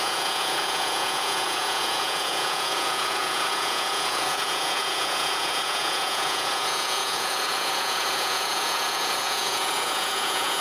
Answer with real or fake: fake